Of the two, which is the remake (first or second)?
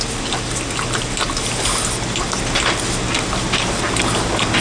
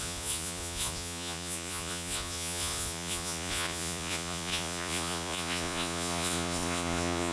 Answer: second